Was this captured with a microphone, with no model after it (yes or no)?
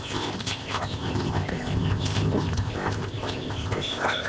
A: no